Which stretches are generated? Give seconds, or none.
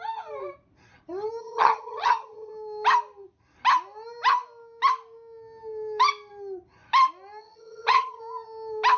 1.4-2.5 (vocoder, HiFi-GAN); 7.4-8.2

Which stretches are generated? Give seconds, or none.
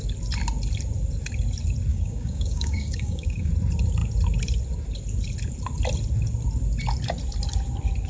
1.9-3.5 (codec, DAC)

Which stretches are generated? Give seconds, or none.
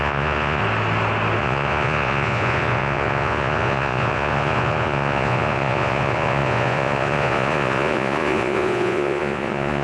0.0-0.6 (vocoder, Vocos); 1.4-9.8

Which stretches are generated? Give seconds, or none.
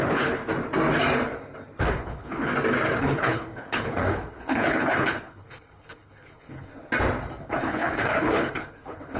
0.0-0.4 (codec, HILCodec); 1.8-2.5; 3.0-6.7; 7.4-9.2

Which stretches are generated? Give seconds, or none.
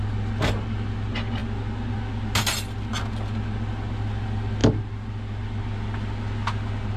none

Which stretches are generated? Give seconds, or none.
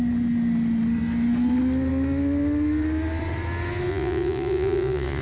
3.9-5.2 (vocoder, Vocos)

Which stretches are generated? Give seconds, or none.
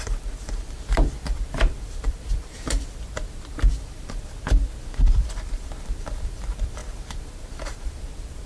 0.0-8.5 (vocoder, BigVGAN v2)